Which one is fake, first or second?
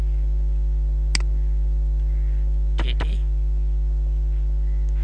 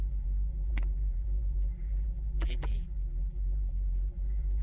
second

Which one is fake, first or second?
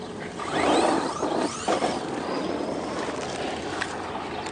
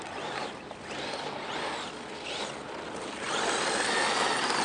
first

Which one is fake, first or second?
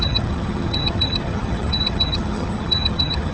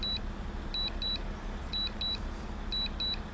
first